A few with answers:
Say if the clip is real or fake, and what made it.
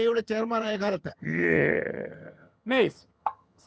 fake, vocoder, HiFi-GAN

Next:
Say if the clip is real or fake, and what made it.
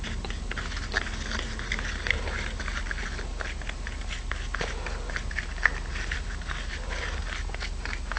real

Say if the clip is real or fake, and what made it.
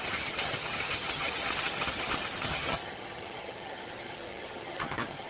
fake, vocoder, HiFi-GAN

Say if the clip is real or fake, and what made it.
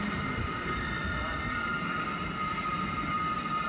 real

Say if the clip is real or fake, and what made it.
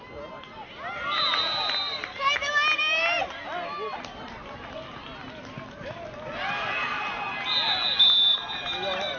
real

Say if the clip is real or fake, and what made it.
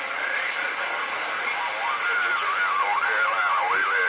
real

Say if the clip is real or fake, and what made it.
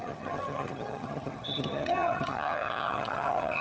fake, vocoder, HiFi-GAN